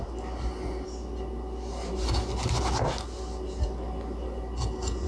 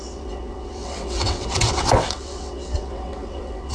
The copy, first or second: second